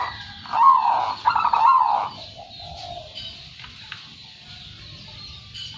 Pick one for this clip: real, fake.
real